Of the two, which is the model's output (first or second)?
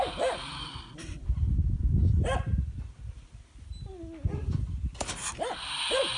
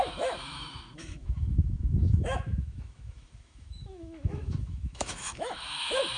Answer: second